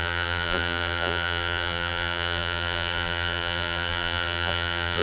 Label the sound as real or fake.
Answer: fake